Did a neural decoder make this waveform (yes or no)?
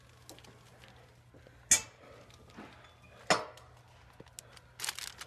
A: no